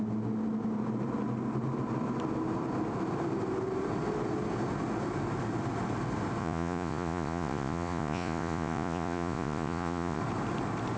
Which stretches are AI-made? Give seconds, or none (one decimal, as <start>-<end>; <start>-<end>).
6.4-10.2